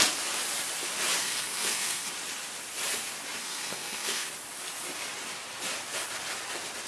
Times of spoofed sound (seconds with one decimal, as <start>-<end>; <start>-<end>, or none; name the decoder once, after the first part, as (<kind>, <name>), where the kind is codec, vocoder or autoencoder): 1.2-2.1 (codec, SNAC); 3.4-4.3